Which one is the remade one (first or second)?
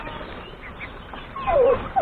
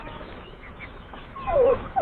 second